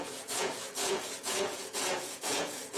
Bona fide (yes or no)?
no